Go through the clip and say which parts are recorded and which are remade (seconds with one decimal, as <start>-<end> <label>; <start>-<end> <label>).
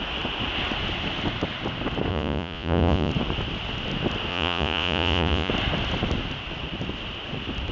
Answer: 0.0-2.1 recorded; 2.1-3.1 remade; 3.1-4.3 recorded; 4.3-5.5 remade; 5.5-7.7 recorded